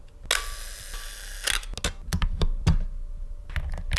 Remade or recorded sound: recorded